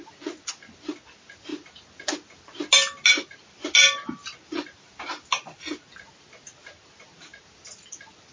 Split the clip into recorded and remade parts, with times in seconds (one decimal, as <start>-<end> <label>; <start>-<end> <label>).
0.0-8.3 recorded